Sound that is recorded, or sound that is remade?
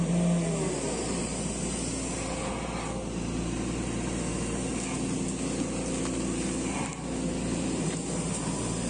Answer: recorded